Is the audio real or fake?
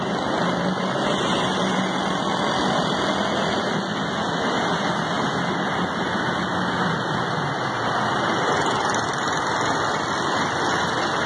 real